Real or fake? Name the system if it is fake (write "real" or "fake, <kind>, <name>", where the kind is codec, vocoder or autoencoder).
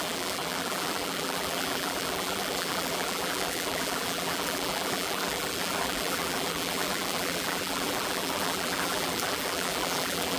fake, vocoder, BigVGAN v2